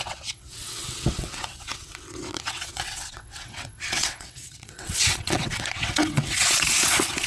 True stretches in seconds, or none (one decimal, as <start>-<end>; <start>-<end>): none